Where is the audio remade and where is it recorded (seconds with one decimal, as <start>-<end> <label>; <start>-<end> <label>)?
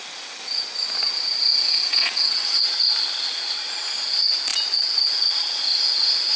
0.0-1.5 recorded; 1.5-2.6 remade; 2.6-6.4 recorded